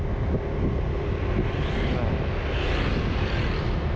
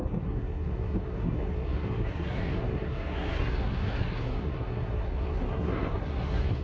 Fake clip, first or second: second